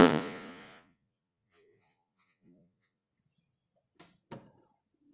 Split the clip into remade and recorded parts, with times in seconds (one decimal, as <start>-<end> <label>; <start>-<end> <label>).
0.0-3.1 remade; 3.1-5.1 recorded